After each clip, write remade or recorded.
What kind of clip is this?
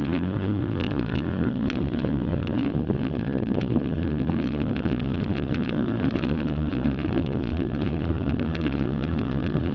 remade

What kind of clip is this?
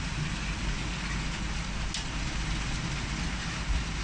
recorded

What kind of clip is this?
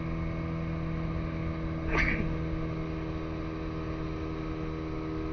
recorded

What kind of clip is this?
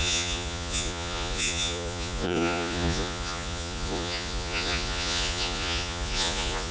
remade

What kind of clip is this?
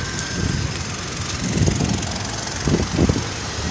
recorded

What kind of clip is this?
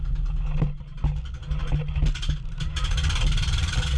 recorded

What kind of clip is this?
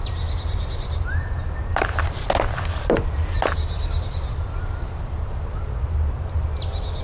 recorded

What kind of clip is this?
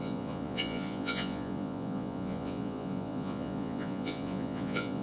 remade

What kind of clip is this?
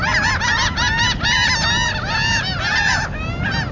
recorded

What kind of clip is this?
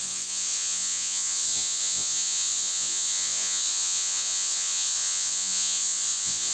remade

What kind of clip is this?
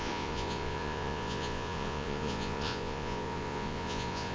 remade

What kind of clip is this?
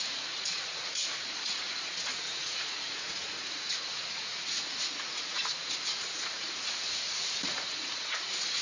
remade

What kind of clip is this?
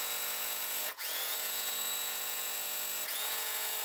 remade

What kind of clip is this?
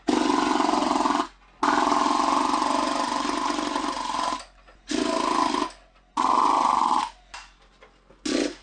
recorded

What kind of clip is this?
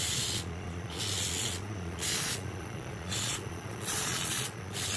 remade